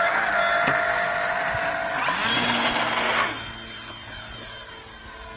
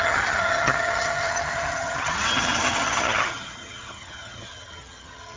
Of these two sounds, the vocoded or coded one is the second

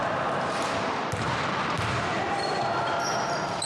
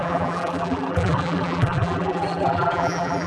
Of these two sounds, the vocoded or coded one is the second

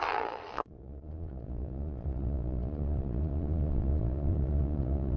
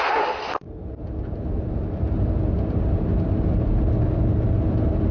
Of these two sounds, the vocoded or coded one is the first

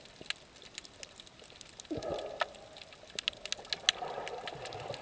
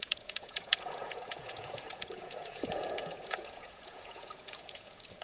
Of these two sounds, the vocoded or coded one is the second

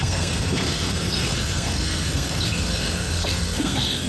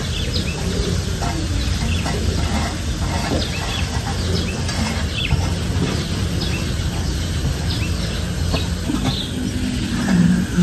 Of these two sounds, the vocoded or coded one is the first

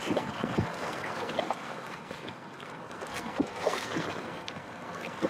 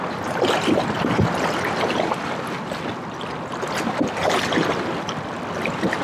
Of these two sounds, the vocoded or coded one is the first